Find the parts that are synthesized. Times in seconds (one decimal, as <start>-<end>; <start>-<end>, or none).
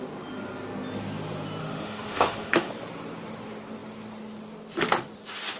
1.6-2.7